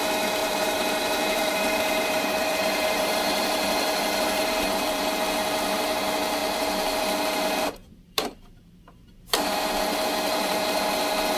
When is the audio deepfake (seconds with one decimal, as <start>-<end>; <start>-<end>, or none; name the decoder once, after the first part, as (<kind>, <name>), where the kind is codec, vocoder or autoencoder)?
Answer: 0.4-5.2 (vocoder, BigVGAN v2); 6.4-7.0; 7.8-9.6; 10.3-10.9